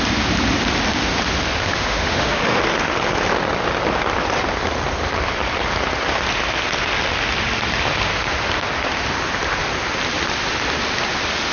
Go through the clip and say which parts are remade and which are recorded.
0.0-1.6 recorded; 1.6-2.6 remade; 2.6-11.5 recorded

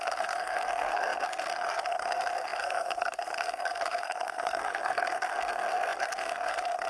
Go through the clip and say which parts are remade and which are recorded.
0.0-6.9 remade

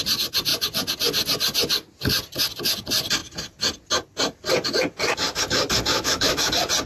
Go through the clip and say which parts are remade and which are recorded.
0.0-5.9 recorded; 5.9-6.5 remade; 6.5-6.9 recorded

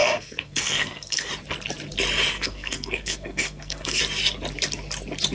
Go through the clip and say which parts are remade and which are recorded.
0.0-1.3 remade; 1.3-2.3 recorded; 2.3-4.0 remade; 4.0-5.3 recorded

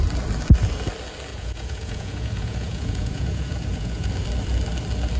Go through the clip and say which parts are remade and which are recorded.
0.0-1.3 recorded; 1.3-4.1 remade; 4.1-5.2 recorded